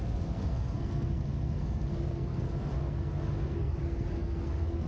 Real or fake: fake